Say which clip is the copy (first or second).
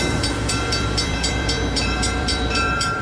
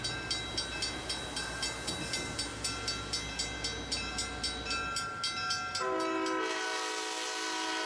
first